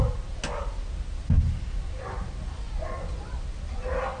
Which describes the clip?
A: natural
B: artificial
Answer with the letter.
A